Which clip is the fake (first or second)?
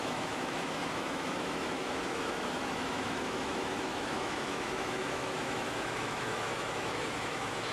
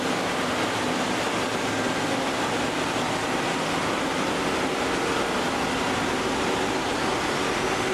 first